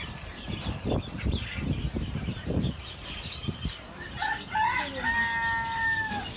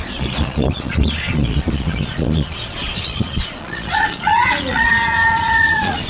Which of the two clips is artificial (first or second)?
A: second